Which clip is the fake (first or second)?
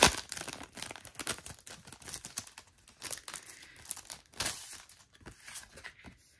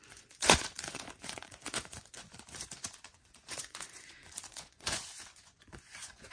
second